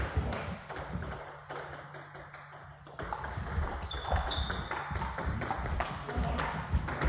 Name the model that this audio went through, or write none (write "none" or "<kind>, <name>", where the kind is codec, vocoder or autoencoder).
none